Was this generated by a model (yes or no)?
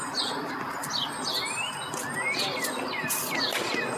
no